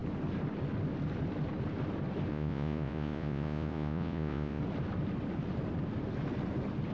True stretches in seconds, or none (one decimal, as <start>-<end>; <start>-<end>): 0.0-2.3; 4.6-6.9